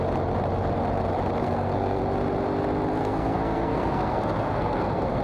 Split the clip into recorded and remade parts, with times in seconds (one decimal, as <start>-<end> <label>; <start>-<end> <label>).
0.0-1.4 recorded; 1.4-2.0 remade; 2.0-3.0 recorded; 3.0-5.2 remade